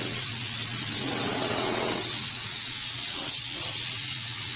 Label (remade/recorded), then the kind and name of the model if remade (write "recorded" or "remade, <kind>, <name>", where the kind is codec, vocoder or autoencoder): remade, vocoder, WaveNeXt